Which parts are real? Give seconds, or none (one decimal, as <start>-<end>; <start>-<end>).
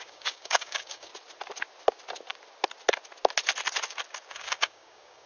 1.1-4.3